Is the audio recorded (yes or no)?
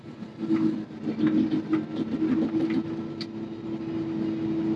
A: yes